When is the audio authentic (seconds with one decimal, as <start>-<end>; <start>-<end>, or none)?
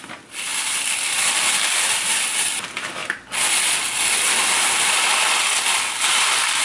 0.0-6.6